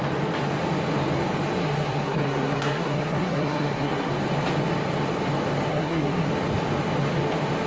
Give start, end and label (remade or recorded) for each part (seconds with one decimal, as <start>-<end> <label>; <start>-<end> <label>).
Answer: 0.0-1.6 recorded; 1.6-4.1 remade; 4.1-5.7 recorded; 5.7-6.3 remade; 6.3-7.7 recorded